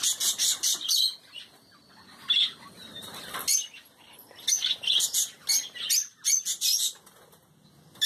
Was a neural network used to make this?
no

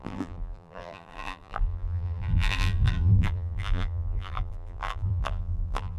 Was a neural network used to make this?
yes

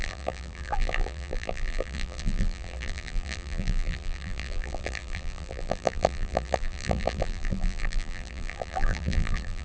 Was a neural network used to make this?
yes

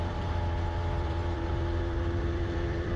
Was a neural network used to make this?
yes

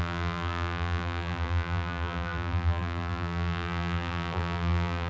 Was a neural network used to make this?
yes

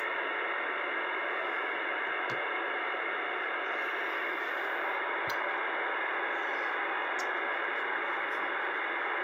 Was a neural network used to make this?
no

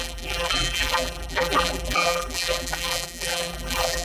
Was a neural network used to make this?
yes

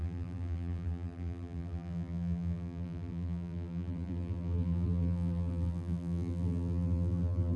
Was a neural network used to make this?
yes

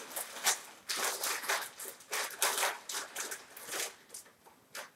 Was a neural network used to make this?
no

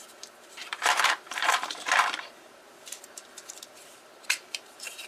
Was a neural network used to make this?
yes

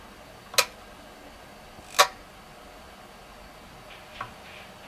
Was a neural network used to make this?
no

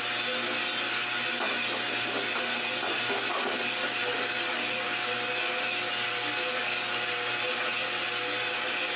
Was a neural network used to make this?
no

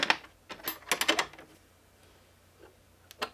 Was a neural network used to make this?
no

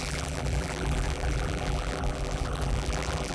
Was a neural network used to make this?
yes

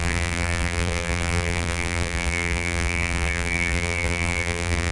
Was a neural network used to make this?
yes